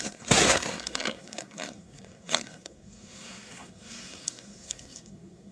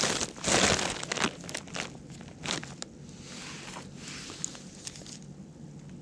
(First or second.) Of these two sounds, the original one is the second